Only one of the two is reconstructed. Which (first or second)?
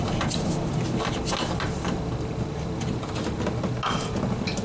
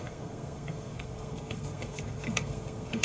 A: second